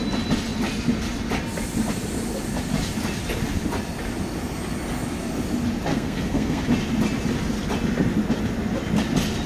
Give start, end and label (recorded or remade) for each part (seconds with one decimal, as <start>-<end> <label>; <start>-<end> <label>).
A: 0.0-5.9 recorded; 5.9-6.6 remade; 6.6-9.5 recorded